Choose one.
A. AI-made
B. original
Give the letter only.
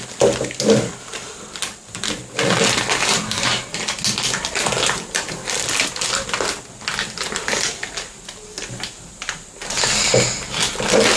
B